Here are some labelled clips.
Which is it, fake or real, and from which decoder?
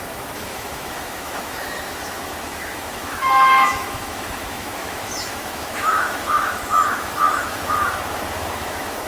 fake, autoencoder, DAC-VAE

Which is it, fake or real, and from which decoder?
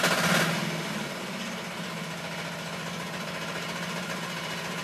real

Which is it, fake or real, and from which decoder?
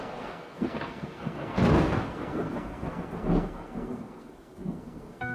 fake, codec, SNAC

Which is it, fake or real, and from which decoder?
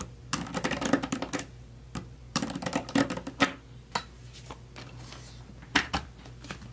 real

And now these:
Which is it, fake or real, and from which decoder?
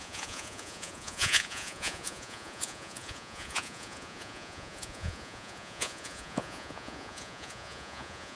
fake, vocoder, Vocos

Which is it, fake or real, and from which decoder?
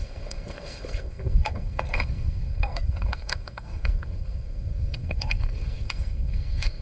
fake, codec, SNAC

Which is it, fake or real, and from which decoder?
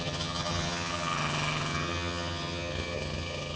fake, vocoder, HiFi-GAN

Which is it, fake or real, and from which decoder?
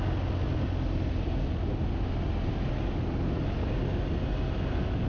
real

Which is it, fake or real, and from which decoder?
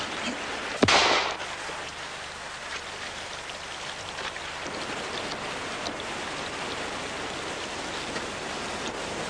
real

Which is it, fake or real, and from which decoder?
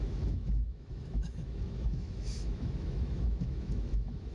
fake, autoencoder, DAC-VAE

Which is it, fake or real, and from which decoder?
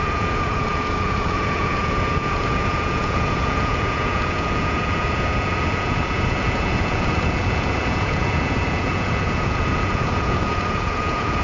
fake, vocoder, Vocos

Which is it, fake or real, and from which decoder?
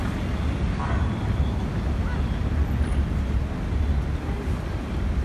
real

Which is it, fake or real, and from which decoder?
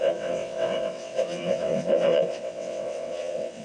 fake, vocoder, WaveNeXt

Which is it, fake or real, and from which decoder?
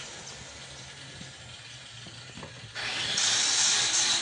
real